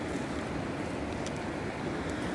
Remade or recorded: recorded